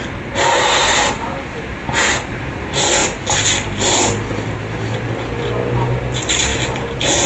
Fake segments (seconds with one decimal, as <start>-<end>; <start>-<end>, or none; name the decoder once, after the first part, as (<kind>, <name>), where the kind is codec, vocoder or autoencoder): none